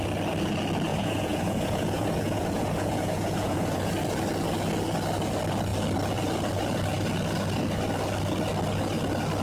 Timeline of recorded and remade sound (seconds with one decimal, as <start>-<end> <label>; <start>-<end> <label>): 0.0-0.9 recorded; 0.9-3.9 remade; 3.9-9.4 recorded